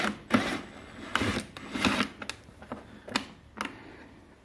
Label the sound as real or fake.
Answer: real